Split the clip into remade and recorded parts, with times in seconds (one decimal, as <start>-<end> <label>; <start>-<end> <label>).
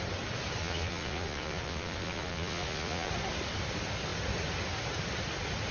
0.0-0.6 recorded; 0.6-3.1 remade; 3.1-5.7 recorded